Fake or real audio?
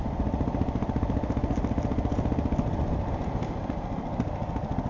real